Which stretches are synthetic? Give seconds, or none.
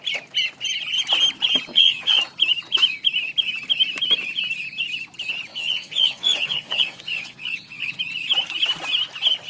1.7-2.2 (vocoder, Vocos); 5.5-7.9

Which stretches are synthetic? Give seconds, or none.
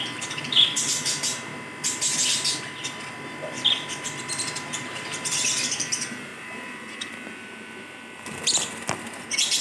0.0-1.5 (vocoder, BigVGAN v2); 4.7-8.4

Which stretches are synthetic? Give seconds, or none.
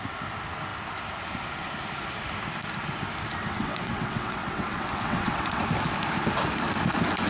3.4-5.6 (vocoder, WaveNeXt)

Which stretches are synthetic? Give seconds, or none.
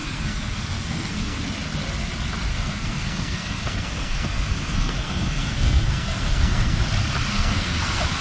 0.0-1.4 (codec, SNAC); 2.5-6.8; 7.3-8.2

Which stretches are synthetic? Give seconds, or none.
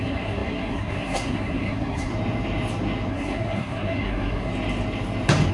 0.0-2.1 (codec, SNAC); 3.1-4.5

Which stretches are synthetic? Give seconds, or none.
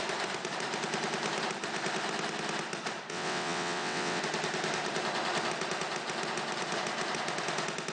3.1-4.2 (vocoder, WaveNeXt)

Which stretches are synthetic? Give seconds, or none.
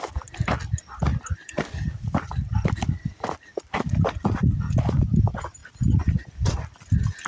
0.0-5.6 (vocoder, BigVGAN v2); 6.2-7.3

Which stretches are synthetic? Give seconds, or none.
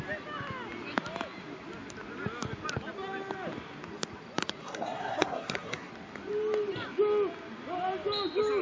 4.6-5.9 (codec, SNAC)